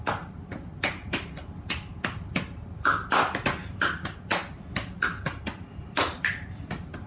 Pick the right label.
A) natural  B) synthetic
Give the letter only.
A